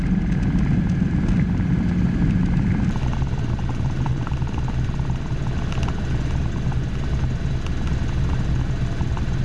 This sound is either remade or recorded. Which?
recorded